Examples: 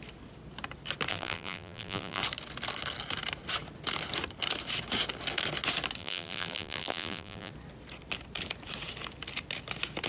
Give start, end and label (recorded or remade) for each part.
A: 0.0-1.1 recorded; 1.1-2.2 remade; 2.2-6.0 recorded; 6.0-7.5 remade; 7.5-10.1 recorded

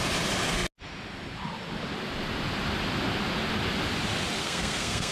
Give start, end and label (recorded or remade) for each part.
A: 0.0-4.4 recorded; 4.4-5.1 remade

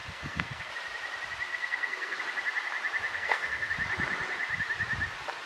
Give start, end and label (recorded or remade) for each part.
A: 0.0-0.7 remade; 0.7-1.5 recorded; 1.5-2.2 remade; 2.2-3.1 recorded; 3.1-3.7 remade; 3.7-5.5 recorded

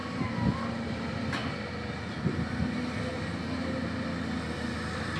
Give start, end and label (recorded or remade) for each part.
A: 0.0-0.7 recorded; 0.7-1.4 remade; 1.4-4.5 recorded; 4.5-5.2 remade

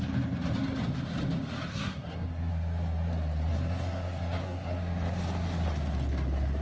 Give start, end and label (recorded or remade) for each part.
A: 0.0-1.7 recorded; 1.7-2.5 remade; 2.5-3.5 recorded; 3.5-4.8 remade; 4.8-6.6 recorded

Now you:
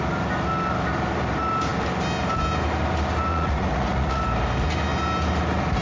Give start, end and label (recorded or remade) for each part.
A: 0.0-3.3 recorded; 3.3-4.2 remade; 4.2-5.8 recorded

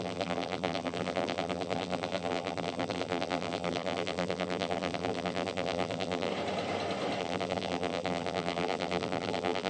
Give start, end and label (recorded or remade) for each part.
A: 0.0-6.3 remade; 6.3-7.2 recorded; 7.2-9.7 remade

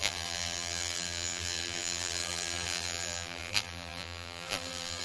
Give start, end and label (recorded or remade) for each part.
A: 0.0-5.0 remade